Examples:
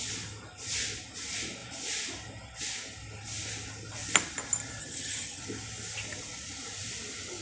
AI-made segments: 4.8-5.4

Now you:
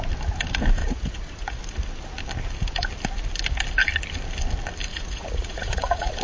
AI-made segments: 0.8-1.6; 4.9-6.2

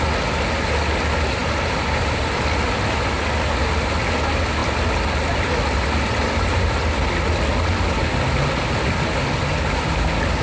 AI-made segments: 1.4-2.6

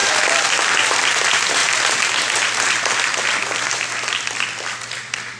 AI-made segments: none